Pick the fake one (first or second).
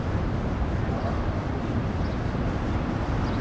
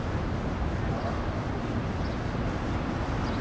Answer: first